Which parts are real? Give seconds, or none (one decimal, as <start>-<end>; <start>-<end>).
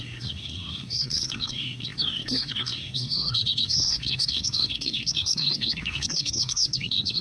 none